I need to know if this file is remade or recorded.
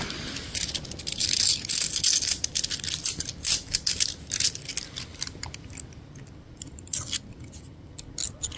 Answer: recorded